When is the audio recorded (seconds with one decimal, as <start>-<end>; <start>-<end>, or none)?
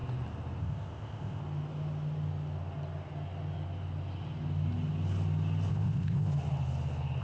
0.0-0.6; 1.4-5.7; 6.3-7.2